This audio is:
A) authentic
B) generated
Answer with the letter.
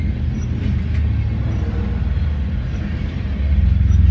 A